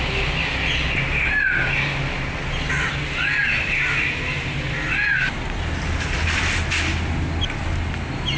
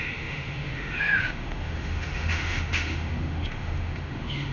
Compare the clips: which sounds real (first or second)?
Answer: first